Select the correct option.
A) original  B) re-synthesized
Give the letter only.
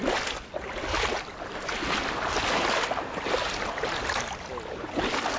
A